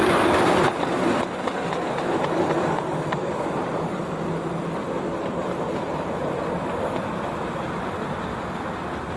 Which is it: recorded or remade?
recorded